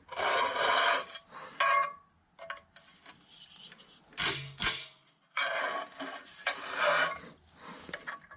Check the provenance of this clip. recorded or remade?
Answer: recorded